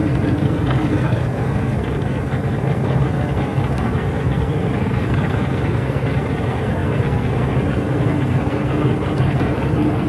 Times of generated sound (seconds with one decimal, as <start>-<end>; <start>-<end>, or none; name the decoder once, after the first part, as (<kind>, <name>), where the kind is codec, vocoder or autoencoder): 0.0-10.1 (codec, SNAC)